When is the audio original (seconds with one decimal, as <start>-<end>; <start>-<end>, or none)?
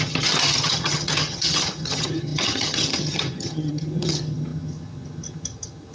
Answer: none